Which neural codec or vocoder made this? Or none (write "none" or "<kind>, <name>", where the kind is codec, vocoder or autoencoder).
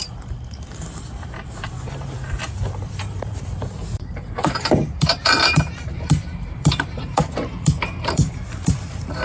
vocoder, BigVGAN v2